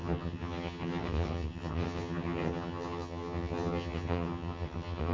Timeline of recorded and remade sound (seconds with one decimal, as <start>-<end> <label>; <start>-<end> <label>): 0.0-5.1 remade